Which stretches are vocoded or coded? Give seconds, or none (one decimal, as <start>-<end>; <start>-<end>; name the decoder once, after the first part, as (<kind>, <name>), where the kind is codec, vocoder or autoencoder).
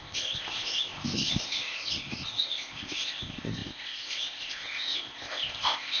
0.0-6.0 (codec, ZipCodec)